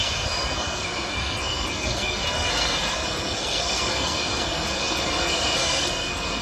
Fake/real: fake